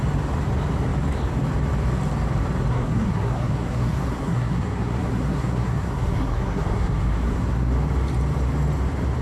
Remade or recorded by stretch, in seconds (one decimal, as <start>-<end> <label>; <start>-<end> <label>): 0.0-2.7 recorded; 2.7-7.7 remade; 7.7-9.2 recorded